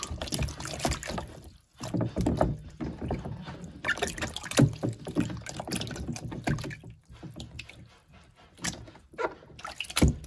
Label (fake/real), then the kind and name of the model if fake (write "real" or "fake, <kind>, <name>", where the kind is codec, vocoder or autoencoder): real